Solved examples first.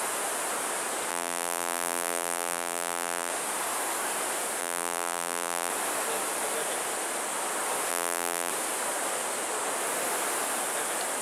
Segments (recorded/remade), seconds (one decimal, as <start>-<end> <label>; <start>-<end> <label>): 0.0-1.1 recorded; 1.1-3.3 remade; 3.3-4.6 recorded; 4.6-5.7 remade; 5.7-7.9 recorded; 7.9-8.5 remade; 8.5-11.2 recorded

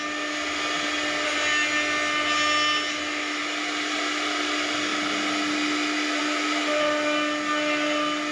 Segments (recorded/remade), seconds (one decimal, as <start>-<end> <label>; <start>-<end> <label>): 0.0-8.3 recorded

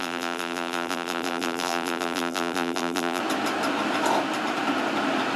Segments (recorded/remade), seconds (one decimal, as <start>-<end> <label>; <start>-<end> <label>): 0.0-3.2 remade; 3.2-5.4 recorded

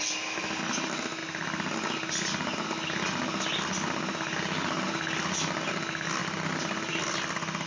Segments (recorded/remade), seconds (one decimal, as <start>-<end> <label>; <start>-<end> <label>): 0.0-7.7 recorded

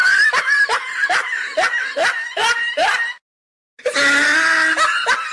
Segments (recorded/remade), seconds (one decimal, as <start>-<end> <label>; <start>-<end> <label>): 0.0-3.2 remade; 3.2-5.3 recorded

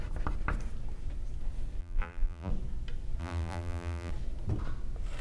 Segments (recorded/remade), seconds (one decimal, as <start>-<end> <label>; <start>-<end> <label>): 0.0-1.8 recorded; 1.8-2.5 remade; 2.5-3.2 recorded; 3.2-4.1 remade; 4.1-5.2 recorded